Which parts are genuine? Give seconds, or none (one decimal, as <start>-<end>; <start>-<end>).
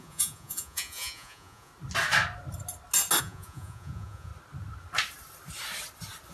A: 1.7-3.2; 4.3-6.3